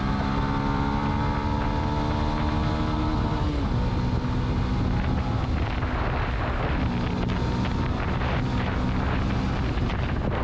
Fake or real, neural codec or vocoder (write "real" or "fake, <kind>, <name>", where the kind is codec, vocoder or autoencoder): real